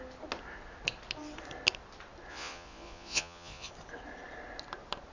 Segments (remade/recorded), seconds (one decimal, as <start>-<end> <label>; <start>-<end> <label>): 0.0-2.3 recorded; 2.3-3.7 remade; 3.7-5.1 recorded